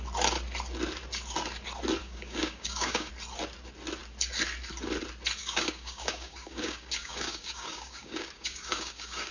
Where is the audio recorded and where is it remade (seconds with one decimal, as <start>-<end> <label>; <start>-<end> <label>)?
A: 0.0-2.0 recorded; 2.0-3.1 remade; 3.1-5.4 recorded; 5.4-9.3 remade